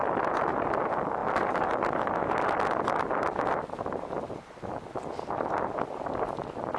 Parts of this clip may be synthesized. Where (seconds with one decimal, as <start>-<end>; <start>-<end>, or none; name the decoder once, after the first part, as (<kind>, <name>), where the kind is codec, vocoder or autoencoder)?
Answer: none